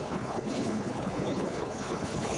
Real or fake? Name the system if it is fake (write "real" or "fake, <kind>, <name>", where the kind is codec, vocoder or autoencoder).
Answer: fake, codec, HILCodec